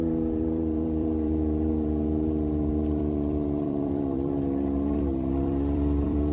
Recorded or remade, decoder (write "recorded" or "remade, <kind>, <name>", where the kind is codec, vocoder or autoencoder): remade, vocoder, BigVGAN v2